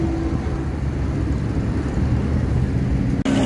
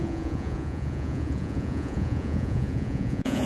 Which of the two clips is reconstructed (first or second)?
second